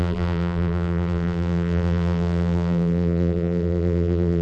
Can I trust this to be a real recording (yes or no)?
no